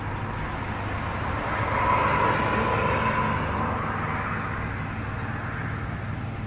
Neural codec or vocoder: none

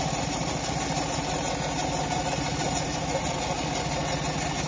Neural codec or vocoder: none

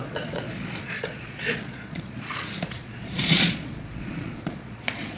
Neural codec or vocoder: vocoder, Vocos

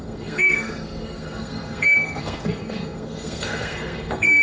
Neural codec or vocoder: codec, SNAC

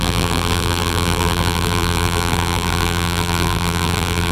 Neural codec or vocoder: vocoder, BigVGAN v2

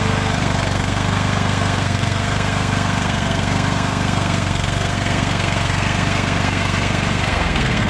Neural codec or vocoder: codec, SNAC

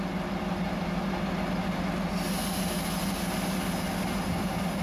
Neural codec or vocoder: none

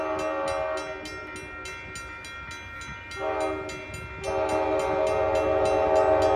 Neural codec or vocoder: none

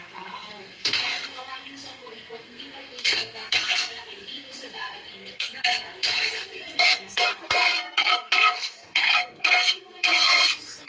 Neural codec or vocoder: codec, SNAC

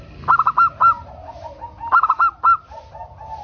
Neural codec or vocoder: none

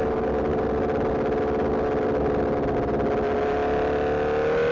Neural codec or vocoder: none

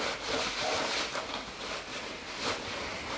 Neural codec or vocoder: none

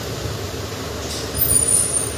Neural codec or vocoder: none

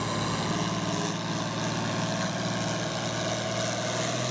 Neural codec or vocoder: none